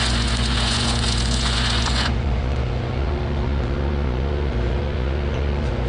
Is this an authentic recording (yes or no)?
no